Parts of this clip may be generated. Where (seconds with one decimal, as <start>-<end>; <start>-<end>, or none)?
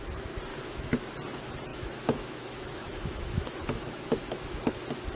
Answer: 0.5-1.1; 1.7-4.7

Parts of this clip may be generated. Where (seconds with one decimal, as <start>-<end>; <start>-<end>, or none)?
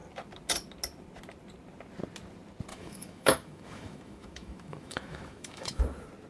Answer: 2.7-5.8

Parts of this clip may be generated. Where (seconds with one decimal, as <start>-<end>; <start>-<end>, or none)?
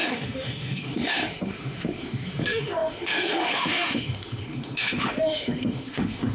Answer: 0.0-6.3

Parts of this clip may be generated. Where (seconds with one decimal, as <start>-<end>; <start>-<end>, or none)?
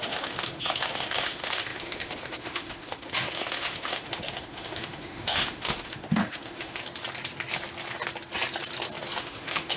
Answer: 0.0-6.8; 9.2-9.8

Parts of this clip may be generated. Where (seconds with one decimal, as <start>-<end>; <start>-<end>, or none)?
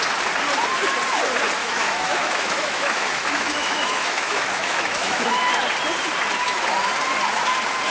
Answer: 1.6-5.3